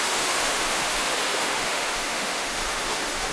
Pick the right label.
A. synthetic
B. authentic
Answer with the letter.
A